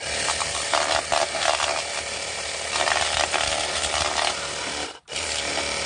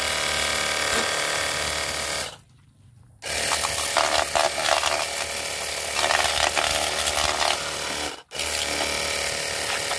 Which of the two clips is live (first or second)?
second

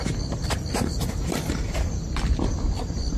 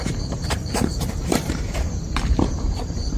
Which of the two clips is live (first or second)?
first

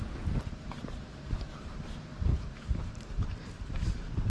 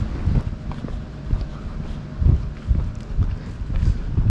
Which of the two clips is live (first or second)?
second